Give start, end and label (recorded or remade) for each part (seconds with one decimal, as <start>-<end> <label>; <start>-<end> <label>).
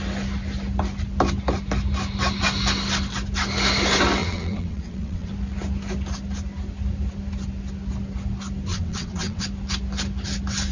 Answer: 0.0-4.2 recorded; 4.2-5.3 remade; 5.3-8.7 recorded; 8.7-9.4 remade; 9.4-10.7 recorded